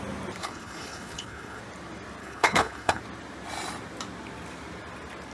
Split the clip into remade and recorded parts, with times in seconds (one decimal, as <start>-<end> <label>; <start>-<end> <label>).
0.0-0.4 recorded; 0.4-1.6 remade; 1.6-2.2 recorded; 2.2-3.0 remade; 3.0-5.3 recorded